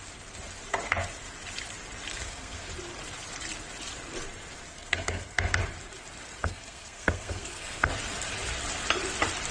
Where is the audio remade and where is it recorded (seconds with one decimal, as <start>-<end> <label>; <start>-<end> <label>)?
0.0-2.1 recorded; 2.1-2.7 remade; 2.7-4.7 recorded; 4.7-5.6 remade; 5.6-6.4 recorded; 6.4-7.9 remade; 7.9-9.5 recorded